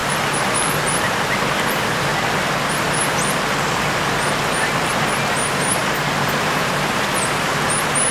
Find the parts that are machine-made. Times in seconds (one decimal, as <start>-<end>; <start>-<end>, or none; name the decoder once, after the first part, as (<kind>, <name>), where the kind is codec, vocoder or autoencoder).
0.0-2.1 (vocoder, BigVGAN v2); 5.3-5.8; 6.5-8.1